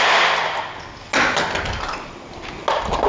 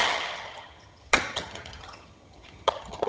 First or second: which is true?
first